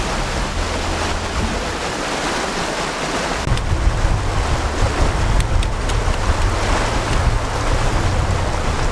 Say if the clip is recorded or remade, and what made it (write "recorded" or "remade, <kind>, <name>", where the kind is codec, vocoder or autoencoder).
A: recorded